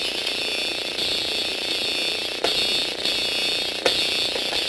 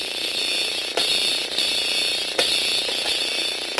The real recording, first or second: first